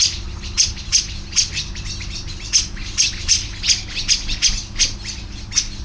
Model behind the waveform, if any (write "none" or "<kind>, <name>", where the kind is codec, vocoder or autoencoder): none